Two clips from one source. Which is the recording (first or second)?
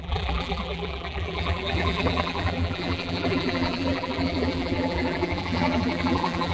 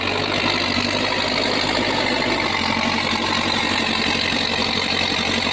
second